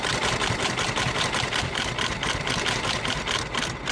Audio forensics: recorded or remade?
recorded